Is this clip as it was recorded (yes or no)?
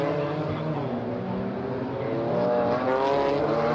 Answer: yes